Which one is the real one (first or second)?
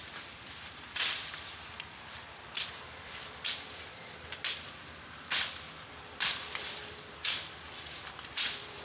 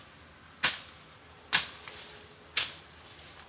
second